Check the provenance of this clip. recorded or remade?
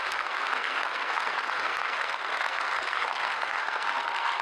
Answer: remade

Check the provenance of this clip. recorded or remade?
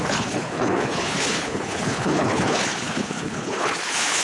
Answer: remade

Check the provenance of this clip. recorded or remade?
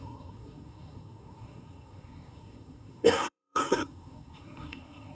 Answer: remade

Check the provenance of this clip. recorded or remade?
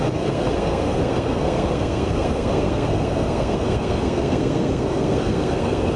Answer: remade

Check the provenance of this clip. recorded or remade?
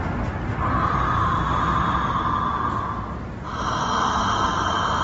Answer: recorded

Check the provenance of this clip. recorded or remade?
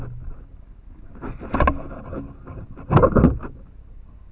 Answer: recorded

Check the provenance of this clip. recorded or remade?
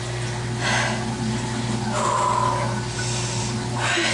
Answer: recorded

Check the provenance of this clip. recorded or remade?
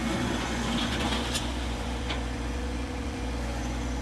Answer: remade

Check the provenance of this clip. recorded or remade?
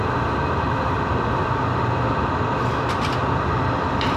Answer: recorded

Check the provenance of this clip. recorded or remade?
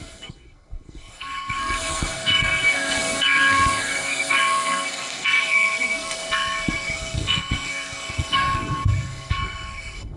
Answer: remade